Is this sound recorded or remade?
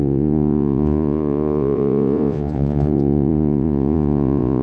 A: remade